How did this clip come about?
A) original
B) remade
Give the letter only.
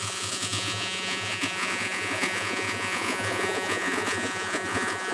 B